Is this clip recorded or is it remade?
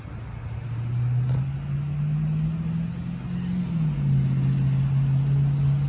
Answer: recorded